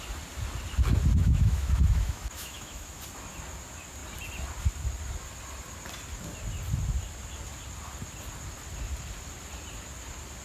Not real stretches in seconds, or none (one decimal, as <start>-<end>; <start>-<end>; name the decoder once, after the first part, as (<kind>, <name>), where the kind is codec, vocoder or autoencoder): 1.2-3.0 (autoencoder, DAC-VAE)